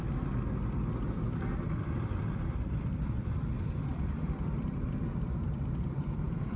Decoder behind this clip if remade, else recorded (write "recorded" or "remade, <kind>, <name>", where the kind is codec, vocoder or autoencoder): recorded